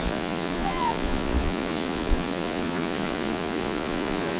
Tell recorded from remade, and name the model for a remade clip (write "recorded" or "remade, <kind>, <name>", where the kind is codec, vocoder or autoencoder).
remade, vocoder, Vocos